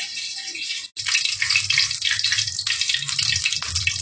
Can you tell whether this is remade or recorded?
recorded